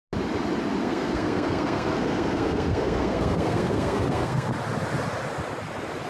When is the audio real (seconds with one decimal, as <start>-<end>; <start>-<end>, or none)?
0.0-0.8; 4.5-6.1